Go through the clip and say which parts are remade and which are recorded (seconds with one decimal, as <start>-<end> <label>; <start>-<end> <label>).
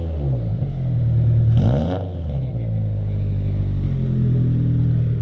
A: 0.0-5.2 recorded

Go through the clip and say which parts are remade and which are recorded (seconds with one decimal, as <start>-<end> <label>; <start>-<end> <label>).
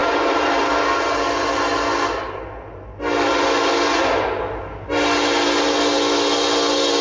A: 0.0-0.6 remade; 0.6-7.0 recorded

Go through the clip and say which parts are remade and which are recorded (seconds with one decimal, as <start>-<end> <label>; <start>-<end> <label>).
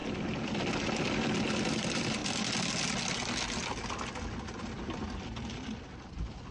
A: 0.0-2.2 remade; 2.2-3.0 recorded; 3.0-3.6 remade; 3.6-4.2 recorded; 4.2-6.5 remade